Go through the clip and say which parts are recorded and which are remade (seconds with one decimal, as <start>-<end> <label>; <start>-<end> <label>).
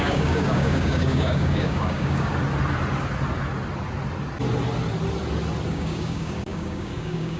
0.0-2.3 remade; 2.3-5.7 recorded; 5.7-7.4 remade